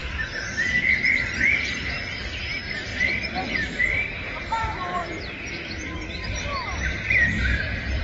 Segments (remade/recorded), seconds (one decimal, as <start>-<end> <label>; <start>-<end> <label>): 0.0-5.0 remade; 5.0-6.3 recorded; 6.3-8.0 remade